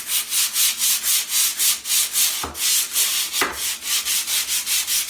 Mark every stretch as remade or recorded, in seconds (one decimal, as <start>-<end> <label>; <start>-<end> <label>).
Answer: 0.0-5.1 recorded